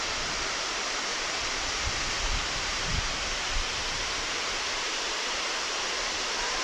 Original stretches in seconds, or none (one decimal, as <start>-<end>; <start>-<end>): 0.0-1.1; 1.9-2.4